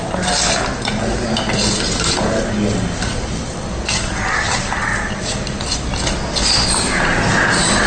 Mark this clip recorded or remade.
recorded